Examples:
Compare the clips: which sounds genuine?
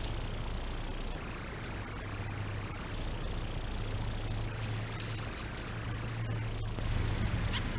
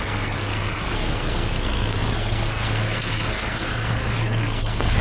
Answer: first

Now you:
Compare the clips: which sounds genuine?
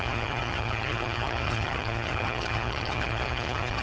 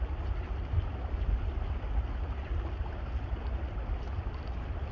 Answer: second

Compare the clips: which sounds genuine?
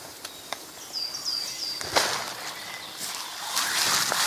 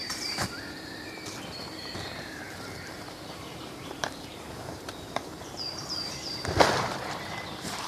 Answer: first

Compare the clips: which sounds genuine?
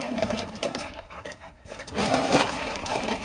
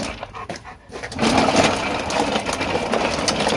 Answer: second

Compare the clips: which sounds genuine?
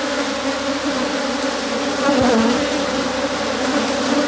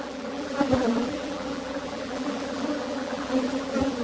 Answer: first